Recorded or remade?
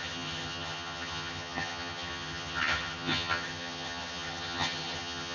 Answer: remade